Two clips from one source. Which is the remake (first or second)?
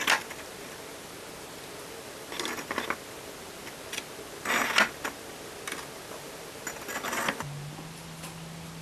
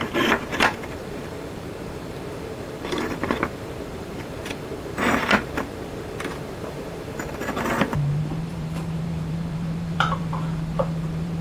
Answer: second